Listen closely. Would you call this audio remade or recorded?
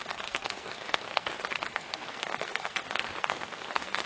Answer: remade